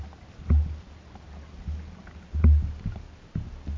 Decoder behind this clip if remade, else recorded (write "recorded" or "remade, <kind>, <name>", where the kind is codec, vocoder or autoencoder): recorded